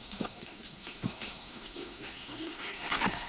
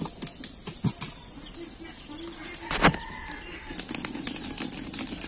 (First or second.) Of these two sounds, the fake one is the first